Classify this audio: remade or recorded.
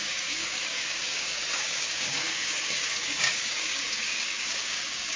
remade